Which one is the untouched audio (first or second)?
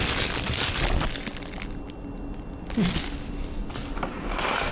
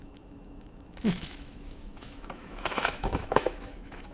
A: first